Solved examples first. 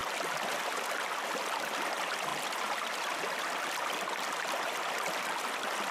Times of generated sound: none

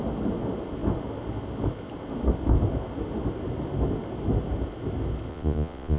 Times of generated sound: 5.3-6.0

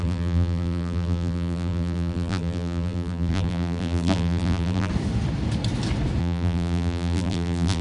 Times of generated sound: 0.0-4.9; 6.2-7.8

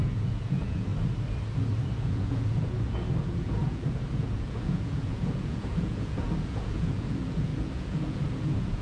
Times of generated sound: 0.0-0.9; 2.0-8.8